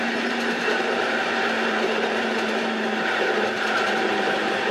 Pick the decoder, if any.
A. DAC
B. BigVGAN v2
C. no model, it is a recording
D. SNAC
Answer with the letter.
B